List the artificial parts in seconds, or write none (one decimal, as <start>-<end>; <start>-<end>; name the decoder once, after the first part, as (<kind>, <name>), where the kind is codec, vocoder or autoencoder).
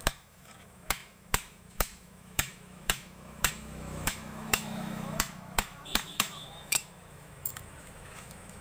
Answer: 0.0-8.6 (autoencoder, DAC-VAE)